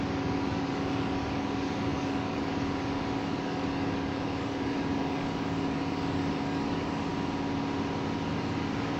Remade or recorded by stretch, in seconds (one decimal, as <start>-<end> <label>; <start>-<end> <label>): 0.0-7.1 remade; 7.1-8.3 recorded; 8.3-9.0 remade